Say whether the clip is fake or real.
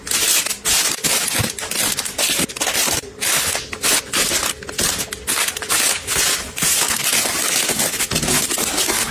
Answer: real